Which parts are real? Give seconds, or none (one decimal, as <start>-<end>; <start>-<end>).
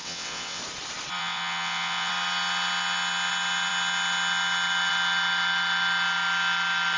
0.6-1.2; 2.1-7.0